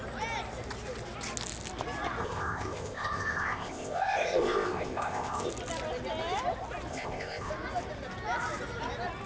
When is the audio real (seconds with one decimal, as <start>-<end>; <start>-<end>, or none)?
0.0-2.2; 5.5-6.9; 7.5-9.3

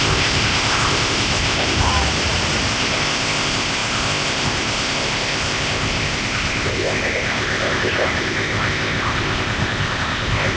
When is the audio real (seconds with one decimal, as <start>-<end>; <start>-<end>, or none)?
1.9-2.7

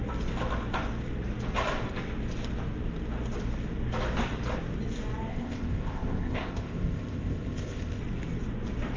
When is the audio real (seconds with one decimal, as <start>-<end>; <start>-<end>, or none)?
0.0-5.3; 8.0-9.0

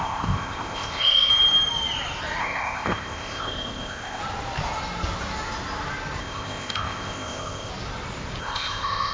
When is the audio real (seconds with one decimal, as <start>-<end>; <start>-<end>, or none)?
1.3-2.4; 4.2-6.2; 7.7-8.4

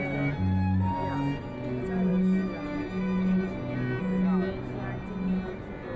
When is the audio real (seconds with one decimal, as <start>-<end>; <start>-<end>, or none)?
0.0-6.0

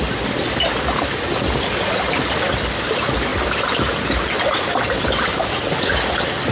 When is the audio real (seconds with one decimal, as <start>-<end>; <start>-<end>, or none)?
0.0-6.5